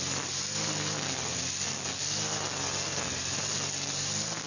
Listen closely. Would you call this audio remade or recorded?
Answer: recorded